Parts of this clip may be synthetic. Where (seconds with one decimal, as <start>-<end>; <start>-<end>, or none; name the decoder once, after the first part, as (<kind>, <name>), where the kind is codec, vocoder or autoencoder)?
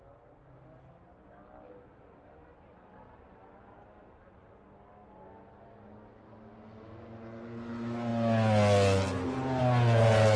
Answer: none